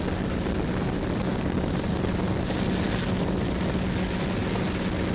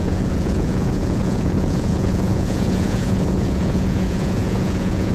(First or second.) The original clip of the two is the first